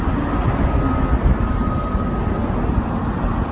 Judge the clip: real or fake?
real